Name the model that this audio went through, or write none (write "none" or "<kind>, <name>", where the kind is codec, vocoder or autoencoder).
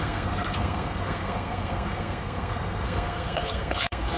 codec, SNAC